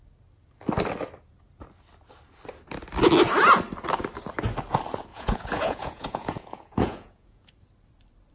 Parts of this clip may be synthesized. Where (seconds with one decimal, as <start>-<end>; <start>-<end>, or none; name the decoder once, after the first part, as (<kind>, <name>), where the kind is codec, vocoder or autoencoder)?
5.1-7.5 (vocoder, Vocos)